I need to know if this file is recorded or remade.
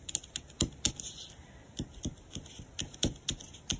recorded